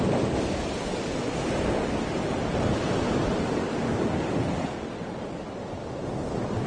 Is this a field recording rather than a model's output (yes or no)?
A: yes